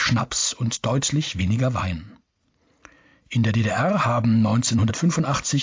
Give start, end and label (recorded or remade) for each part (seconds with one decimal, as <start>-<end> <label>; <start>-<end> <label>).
0.0-3.1 remade; 3.1-4.9 recorded; 4.9-5.6 remade